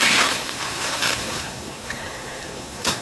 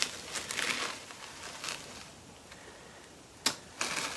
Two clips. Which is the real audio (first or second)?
second